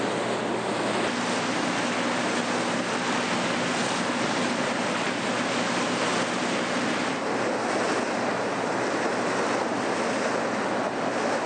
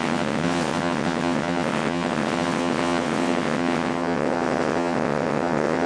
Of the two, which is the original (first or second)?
first